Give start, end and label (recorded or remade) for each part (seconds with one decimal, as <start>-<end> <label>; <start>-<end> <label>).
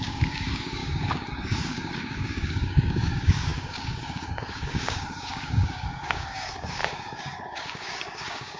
0.0-8.6 remade